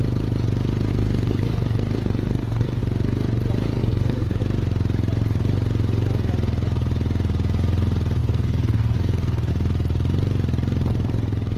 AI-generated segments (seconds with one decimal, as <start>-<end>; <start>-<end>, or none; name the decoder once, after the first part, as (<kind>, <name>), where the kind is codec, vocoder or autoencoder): 0.9-2.8 (codec, SNAC); 3.8-4.4; 8.2-9.5